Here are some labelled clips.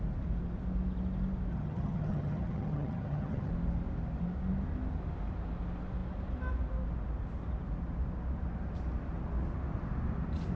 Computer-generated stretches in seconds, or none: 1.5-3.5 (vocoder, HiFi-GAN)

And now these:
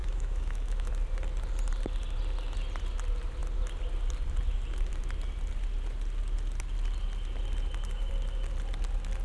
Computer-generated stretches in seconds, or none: 0.0-0.9 (autoencoder, DAC-VAE)

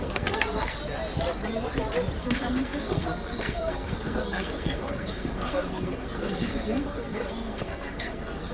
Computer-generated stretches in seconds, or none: 0.0-0.8 (codec, SNAC); 2.2-8.5

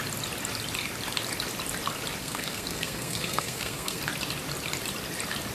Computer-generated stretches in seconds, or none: 2.2-4.0 (codec, SNAC)